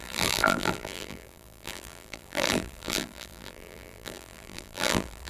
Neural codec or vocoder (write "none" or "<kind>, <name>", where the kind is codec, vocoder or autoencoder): vocoder, BigVGAN v2